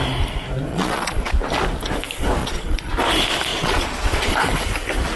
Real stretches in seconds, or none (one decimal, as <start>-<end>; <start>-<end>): 0.0-0.7; 1.3-2.4; 2.9-3.5; 4.3-5.2